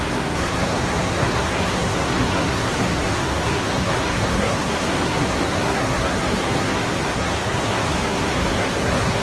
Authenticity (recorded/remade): remade